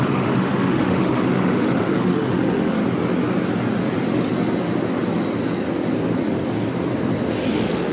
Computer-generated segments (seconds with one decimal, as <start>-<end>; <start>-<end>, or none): 0.0-2.8; 7.5-7.9